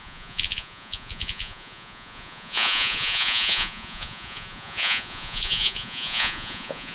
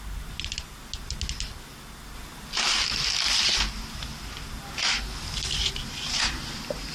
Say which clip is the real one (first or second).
second